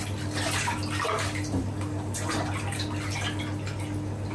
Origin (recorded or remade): recorded